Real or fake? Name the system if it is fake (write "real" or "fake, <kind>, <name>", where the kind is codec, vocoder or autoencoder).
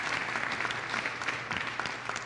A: real